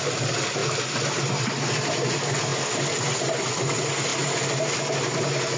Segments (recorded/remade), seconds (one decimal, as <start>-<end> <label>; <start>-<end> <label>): 0.0-5.6 recorded